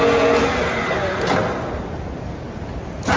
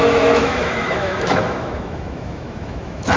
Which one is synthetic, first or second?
second